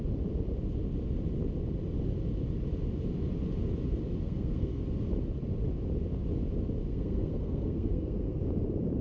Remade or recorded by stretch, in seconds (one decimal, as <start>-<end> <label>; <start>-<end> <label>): 0.0-4.2 recorded; 4.2-4.8 remade; 4.8-6.9 recorded; 6.9-8.4 remade; 8.4-9.0 recorded